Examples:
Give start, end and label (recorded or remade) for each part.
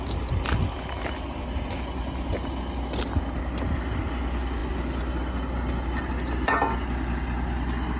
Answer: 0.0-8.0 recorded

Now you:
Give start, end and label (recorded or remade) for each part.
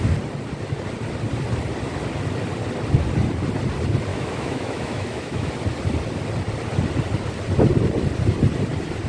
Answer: 0.0-4.1 recorded; 4.1-5.5 remade; 5.5-9.1 recorded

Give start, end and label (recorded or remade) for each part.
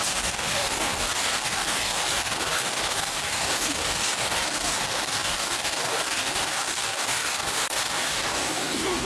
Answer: 0.0-9.0 remade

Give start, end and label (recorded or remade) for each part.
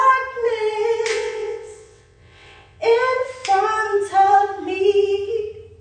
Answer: 0.0-1.1 recorded; 1.1-2.8 remade; 2.8-5.8 recorded